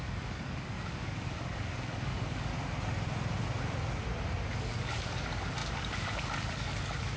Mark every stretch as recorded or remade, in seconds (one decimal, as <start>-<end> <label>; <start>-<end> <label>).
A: 0.0-2.5 remade; 2.5-4.5 recorded; 4.5-7.2 remade